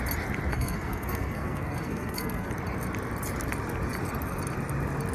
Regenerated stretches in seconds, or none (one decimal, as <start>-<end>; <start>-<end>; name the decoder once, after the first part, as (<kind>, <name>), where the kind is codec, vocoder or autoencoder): 0.5-2.5 (codec, SNAC)